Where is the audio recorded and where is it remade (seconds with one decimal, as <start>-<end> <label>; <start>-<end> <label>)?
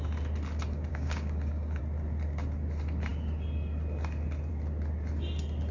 0.0-0.9 recorded; 0.9-1.8 remade; 1.8-5.7 recorded